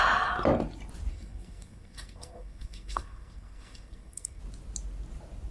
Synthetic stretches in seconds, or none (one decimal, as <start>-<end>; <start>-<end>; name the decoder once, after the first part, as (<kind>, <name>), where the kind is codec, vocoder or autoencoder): 1.1-4.4 (codec, SNAC)